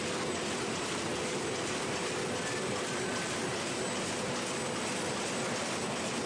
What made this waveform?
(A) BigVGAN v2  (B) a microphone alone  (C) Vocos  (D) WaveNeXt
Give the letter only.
B